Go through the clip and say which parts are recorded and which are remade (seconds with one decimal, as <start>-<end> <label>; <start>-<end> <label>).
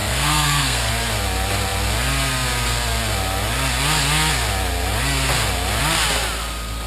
0.0-0.9 remade; 0.9-6.9 recorded